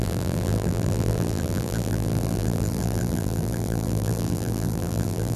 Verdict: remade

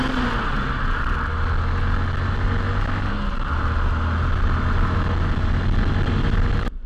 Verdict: recorded